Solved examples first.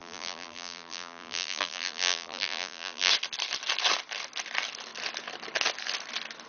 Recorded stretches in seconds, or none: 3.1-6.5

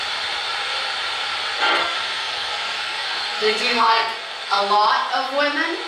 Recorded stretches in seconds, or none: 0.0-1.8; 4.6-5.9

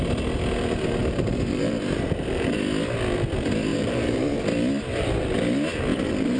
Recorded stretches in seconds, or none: 0.0-1.0; 2.5-3.7; 4.2-6.4